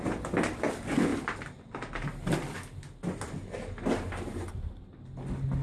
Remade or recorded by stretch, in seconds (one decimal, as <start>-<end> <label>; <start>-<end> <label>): 0.0-5.6 recorded